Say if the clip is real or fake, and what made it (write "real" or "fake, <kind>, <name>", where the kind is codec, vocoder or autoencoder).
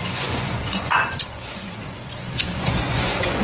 fake, vocoder, Vocos